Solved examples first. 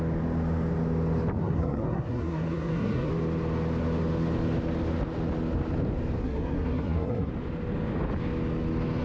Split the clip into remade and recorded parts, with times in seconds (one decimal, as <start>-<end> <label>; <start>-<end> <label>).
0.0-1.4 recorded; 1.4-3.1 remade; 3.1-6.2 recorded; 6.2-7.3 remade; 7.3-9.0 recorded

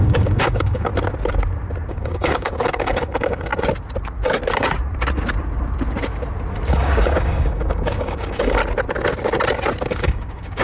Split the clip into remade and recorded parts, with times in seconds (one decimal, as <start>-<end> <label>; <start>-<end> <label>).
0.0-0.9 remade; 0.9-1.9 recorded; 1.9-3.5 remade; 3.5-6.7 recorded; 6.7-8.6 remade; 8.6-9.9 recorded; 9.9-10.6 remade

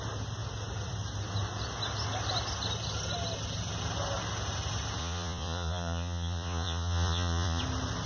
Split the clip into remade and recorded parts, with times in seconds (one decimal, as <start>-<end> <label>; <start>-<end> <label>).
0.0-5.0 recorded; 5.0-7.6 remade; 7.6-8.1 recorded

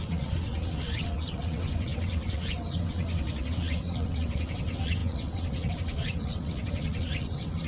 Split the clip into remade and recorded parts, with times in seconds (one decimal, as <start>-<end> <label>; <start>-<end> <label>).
0.0-7.7 remade

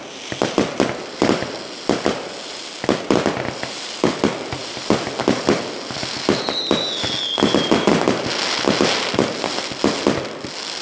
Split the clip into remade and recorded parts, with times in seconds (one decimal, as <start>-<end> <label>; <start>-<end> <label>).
0.0-10.8 recorded